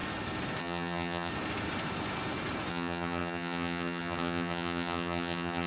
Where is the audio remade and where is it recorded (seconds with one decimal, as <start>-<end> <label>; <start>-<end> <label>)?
0.0-0.6 recorded; 0.6-1.3 remade; 1.3-2.7 recorded; 2.7-5.7 remade